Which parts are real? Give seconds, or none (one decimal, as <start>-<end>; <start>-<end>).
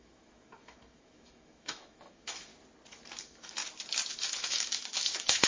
2.5-3.2; 3.6-4.1